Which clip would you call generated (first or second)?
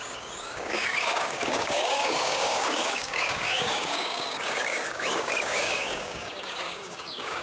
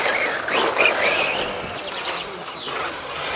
first